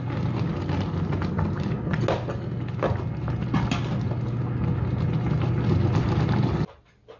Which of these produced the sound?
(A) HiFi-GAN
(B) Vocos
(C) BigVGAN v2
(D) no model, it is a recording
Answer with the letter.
D